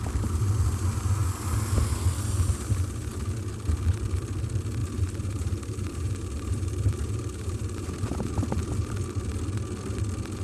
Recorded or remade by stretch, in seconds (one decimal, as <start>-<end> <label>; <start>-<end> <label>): 0.0-4.8 recorded; 4.8-8.3 remade; 8.3-10.4 recorded